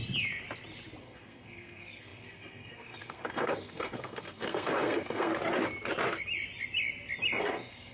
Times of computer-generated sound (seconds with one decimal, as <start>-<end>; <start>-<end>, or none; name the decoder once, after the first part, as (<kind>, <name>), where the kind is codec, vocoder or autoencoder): 1.0-5.3 (codec, SNAC); 7.4-7.9